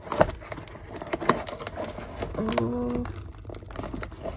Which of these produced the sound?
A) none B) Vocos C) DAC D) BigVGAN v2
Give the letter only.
A